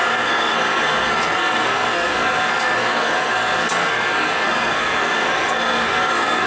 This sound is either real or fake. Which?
fake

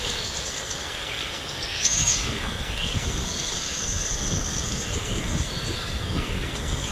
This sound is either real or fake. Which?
fake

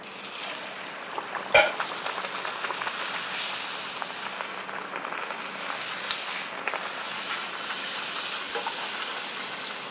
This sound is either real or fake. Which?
real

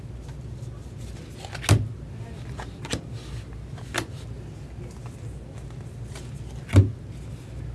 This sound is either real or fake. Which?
real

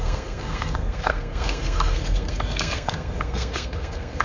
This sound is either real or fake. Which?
fake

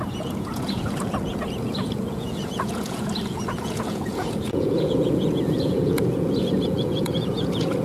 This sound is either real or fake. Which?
fake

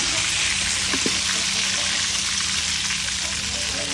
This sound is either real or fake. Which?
real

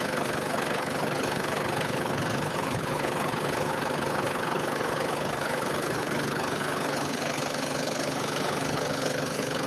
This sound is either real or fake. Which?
fake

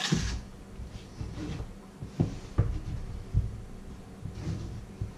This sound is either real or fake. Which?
real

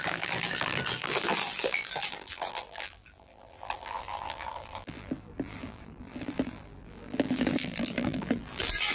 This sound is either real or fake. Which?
fake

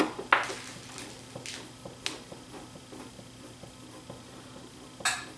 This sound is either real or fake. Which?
real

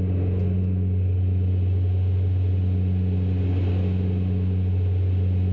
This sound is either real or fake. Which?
real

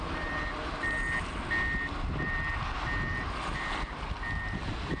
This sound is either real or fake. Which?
real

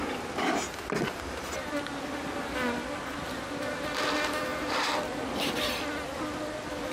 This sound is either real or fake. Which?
real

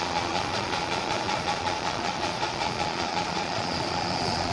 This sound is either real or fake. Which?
fake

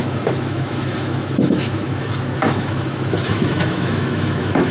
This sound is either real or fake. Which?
fake